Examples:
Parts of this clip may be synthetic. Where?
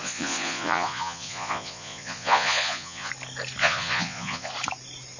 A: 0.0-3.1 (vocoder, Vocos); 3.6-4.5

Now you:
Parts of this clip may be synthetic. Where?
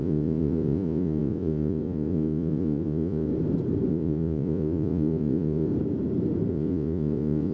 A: 0.0-3.3 (vocoder, Vocos); 3.9-5.7; 6.5-7.5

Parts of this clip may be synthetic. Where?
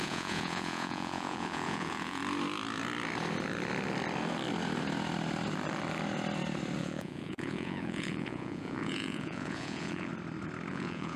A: 0.0-2.2 (vocoder, Vocos); 6.8-10.1; 10.7-11.2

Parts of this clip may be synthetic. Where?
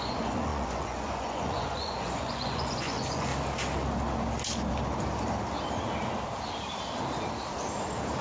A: 0.0-3.3 (vocoder, Vocos)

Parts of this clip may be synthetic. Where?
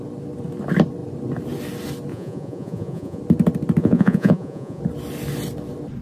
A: 2.1-3.2 (vocoder, Vocos); 3.8-4.8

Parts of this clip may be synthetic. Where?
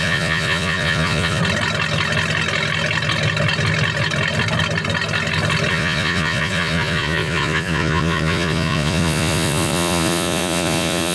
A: 0.0-1.4 (vocoder, Vocos); 5.7-11.1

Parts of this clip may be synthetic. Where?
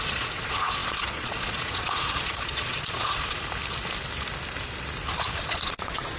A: 0.0-3.4 (vocoder, Vocos); 5.4-6.2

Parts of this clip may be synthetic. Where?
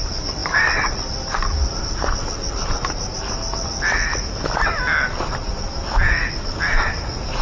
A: none